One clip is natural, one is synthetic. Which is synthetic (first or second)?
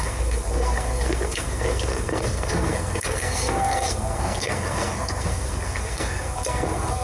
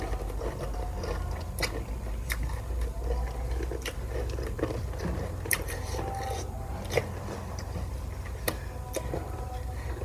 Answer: first